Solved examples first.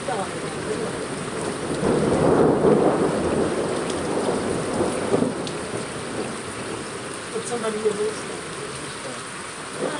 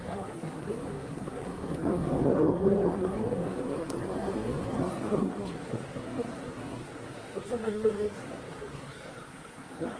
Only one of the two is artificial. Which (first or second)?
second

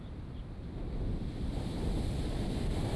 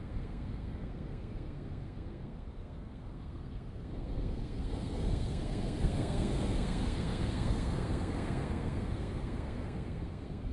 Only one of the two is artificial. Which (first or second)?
second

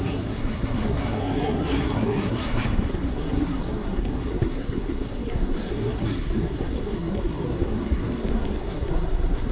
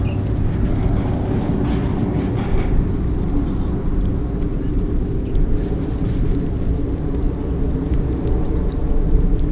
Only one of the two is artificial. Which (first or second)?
first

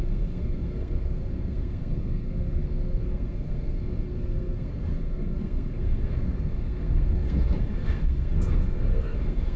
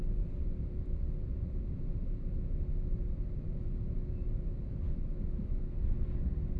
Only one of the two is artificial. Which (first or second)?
first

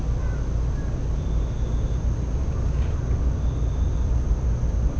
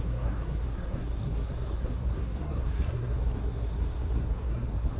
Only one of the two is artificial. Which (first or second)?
second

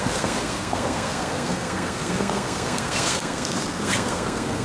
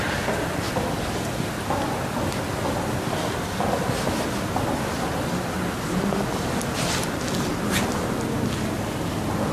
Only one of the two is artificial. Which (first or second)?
first